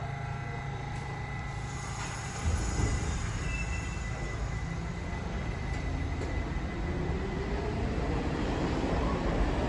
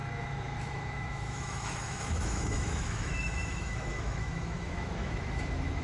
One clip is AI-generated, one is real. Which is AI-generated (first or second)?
second